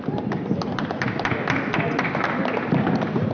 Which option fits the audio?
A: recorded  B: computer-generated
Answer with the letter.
A